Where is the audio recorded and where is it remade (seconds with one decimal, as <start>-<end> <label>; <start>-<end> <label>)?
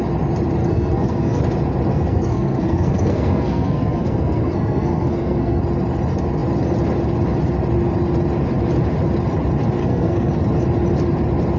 0.0-0.6 recorded; 0.6-1.4 remade; 1.4-1.9 recorded; 1.9-5.6 remade; 5.6-9.8 recorded; 9.8-10.3 remade; 10.3-11.6 recorded